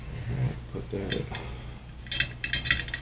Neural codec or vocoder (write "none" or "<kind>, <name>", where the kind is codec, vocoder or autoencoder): none